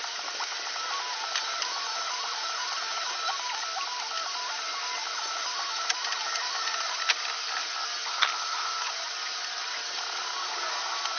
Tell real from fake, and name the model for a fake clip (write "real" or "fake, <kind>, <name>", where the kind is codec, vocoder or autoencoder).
real